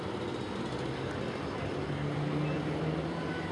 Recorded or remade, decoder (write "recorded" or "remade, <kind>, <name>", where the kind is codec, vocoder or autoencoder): recorded